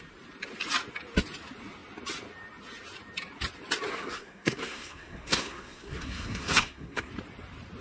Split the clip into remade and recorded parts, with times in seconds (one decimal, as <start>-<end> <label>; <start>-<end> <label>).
0.0-3.9 recorded; 3.9-7.1 remade; 7.1-7.8 recorded